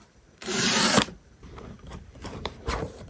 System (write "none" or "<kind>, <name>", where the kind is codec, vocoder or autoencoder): vocoder, BigVGAN v2